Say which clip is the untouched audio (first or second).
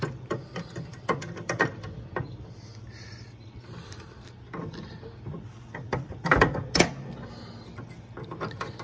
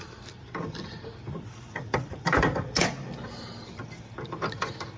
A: first